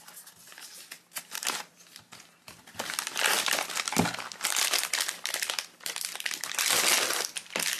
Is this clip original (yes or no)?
yes